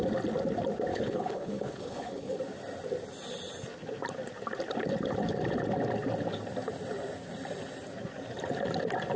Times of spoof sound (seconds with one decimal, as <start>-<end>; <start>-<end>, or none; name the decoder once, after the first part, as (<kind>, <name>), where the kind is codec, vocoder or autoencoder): 0.9-2.4 (codec, HILCodec)